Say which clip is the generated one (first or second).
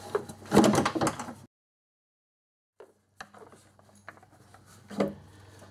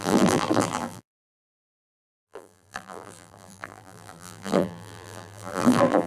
second